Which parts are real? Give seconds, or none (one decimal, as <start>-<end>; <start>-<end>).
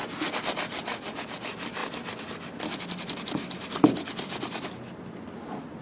0.0-5.8